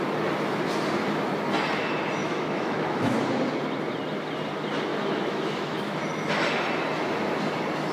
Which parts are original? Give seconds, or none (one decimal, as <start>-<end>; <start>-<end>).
0.0-2.2; 3.2-4.9; 6.0-7.9